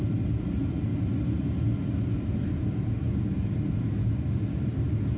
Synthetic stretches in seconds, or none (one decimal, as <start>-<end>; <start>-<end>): 4.0-4.6